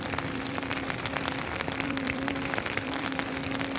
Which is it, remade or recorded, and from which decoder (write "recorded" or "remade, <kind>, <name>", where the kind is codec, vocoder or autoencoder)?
remade, vocoder, BigVGAN v2